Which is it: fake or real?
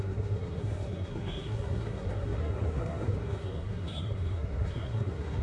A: fake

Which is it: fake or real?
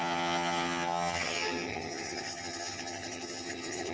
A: fake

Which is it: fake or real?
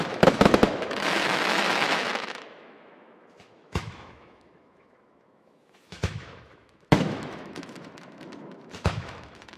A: fake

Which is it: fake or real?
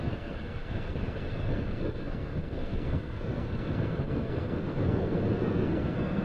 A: fake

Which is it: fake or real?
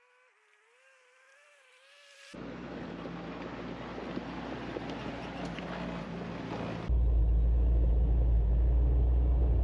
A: real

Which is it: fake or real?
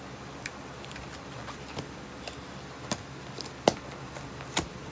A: real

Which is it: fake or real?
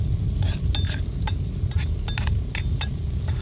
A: real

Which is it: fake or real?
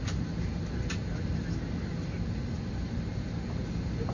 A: real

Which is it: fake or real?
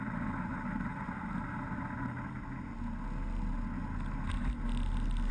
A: real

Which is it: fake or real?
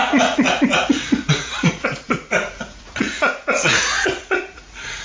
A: fake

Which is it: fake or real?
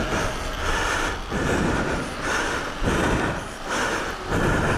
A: real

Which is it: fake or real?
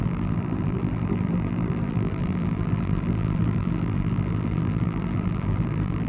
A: fake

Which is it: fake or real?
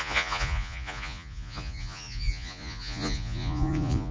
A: fake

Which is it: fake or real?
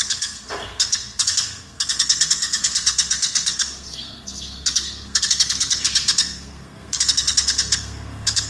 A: fake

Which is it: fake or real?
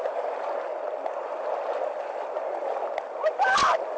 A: real